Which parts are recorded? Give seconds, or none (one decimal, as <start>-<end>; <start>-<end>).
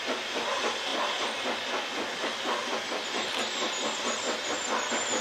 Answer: 0.0-5.2